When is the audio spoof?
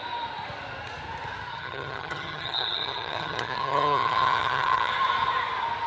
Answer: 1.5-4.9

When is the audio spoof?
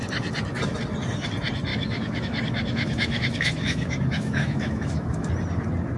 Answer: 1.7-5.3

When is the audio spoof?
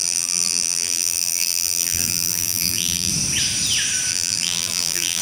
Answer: 0.0-3.1; 4.1-5.2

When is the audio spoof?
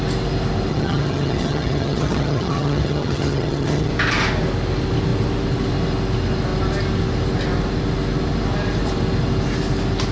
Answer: 0.7-3.9